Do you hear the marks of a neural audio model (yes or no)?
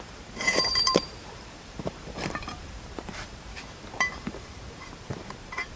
yes